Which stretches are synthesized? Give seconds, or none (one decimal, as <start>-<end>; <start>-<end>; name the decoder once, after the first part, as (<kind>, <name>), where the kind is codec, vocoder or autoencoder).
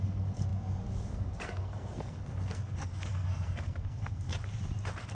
0.0-4.3 (codec, SNAC)